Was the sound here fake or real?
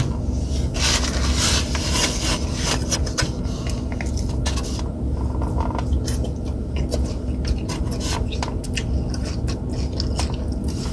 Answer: real